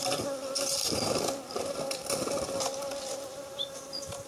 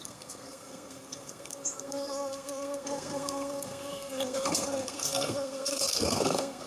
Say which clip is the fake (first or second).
second